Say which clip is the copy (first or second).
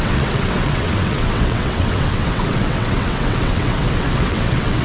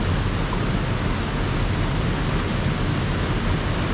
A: first